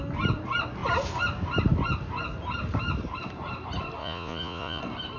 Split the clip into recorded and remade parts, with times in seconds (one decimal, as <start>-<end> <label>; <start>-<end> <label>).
0.0-4.0 recorded; 4.0-4.8 remade; 4.8-5.2 recorded